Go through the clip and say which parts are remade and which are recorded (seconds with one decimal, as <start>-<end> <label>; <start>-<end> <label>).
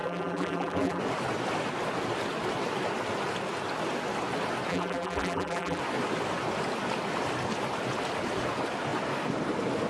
0.0-1.0 remade; 1.0-4.7 recorded; 4.7-5.8 remade; 5.8-9.9 recorded